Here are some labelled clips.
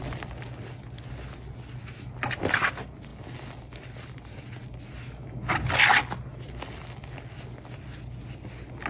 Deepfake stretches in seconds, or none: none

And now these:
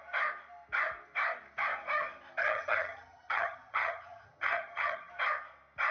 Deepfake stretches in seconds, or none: 2.4-5.1

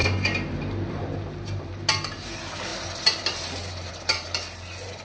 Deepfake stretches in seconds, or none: none

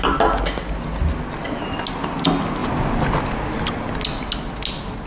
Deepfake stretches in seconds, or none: none

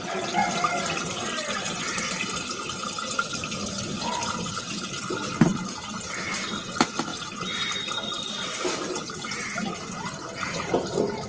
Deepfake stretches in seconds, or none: none

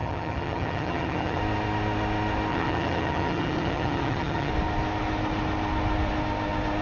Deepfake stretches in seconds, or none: 0.0-1.4; 2.5-4.5